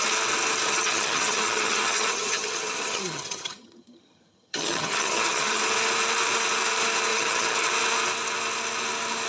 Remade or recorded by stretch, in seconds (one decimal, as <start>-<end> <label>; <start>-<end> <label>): 0.0-0.7 recorded; 0.7-5.6 remade; 5.6-7.1 recorded; 7.1-7.7 remade; 7.7-9.3 recorded

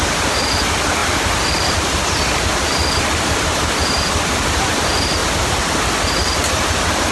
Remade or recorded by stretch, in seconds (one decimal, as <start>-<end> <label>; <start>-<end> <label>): 0.0-5.2 remade; 5.2-6.5 recorded; 6.5-7.1 remade